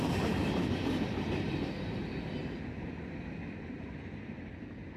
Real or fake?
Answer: real